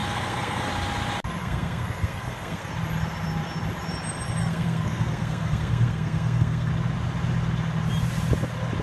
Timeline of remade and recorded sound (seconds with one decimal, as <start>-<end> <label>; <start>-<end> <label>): 0.0-0.7 remade; 0.7-1.4 recorded; 1.4-2.7 remade; 2.7-4.4 recorded; 4.4-6.7 remade; 6.7-8.8 recorded